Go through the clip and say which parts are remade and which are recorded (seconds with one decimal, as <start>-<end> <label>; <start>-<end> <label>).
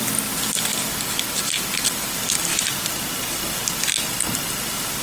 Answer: 0.0-0.7 recorded; 0.7-2.0 remade; 2.0-2.5 recorded; 2.5-3.4 remade; 3.4-5.0 recorded